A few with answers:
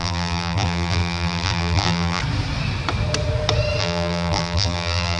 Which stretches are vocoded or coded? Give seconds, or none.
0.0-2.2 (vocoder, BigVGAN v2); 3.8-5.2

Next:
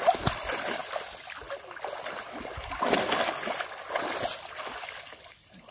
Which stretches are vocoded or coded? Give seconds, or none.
none

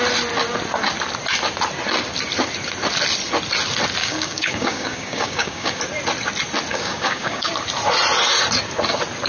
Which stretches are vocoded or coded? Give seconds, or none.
4.0-5.8 (codec, DAC); 6.7-7.5